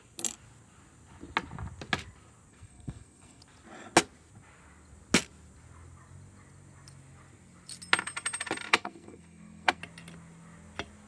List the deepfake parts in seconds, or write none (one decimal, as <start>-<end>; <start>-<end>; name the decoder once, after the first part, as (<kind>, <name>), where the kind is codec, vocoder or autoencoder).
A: 2.5-3.4 (codec, SNAC); 8.7-9.8